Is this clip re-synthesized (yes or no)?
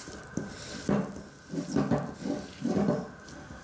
no